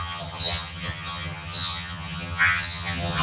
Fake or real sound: fake